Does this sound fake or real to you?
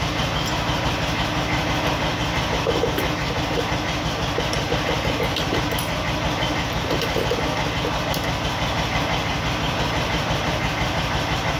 real